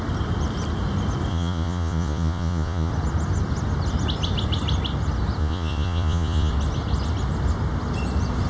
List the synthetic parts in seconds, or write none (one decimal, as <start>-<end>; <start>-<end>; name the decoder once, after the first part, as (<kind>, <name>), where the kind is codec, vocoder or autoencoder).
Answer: 1.3-2.9 (vocoder, Vocos); 5.4-6.5